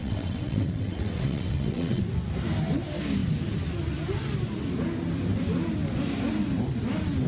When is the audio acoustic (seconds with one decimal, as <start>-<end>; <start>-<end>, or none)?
2.0-7.3